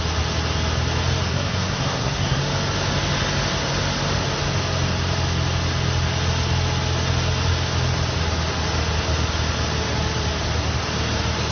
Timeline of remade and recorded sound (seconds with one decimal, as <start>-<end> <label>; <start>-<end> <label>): 0.0-1.3 recorded; 1.3-2.4 remade; 2.4-11.5 recorded